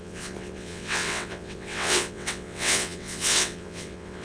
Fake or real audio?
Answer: fake